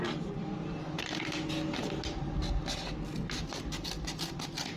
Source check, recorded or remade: recorded